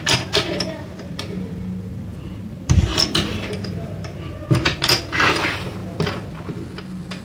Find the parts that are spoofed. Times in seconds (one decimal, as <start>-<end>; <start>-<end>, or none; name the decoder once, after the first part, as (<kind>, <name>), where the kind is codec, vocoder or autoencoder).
0.0-5.8 (vocoder, BigVGAN v2)